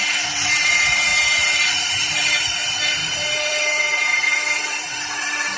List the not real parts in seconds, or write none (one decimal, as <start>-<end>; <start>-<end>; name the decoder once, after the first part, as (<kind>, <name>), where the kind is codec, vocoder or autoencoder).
0.0-4.2 (vocoder, BigVGAN v2); 4.7-5.6